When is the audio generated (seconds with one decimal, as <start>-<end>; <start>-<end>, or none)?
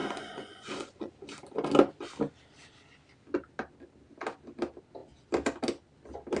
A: 0.0-1.1